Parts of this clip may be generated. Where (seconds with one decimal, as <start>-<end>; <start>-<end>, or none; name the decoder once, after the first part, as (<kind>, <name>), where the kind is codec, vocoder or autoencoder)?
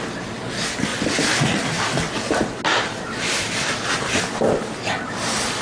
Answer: none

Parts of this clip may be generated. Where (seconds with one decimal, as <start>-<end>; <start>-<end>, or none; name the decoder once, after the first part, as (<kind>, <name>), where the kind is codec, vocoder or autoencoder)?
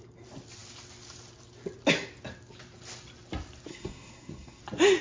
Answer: 3.7-4.6 (codec, SNAC)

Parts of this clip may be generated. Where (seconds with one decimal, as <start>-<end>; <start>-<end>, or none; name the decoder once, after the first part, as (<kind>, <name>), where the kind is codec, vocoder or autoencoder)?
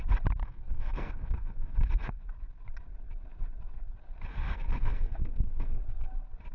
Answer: 0.4-2.2 (codec, SNAC); 4.3-5.8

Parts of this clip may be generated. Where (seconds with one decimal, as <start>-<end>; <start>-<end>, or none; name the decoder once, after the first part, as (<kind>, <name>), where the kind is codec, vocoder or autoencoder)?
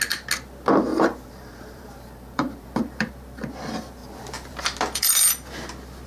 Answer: 0.9-3.1 (vocoder, BigVGAN v2); 4.0-4.6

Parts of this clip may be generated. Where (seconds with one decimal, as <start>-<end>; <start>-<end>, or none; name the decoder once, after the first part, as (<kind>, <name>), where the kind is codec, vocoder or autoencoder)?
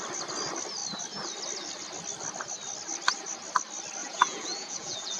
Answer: 4.0-5.2 (vocoder, Vocos)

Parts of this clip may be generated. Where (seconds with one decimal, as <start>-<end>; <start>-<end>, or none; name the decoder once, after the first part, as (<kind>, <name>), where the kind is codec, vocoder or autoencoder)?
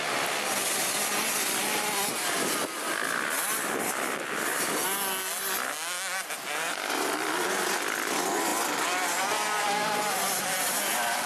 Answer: none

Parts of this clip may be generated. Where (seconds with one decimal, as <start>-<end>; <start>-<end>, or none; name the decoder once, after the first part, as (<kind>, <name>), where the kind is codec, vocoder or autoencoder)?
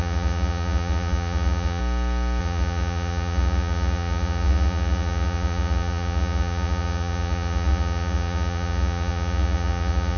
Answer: 0.0-1.8 (vocoder, Vocos); 2.4-10.2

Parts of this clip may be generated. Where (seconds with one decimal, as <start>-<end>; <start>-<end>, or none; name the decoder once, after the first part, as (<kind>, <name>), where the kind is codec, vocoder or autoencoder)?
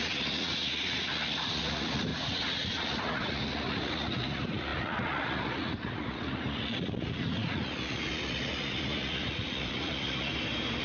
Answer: 0.0-10.3 (vocoder, Vocos)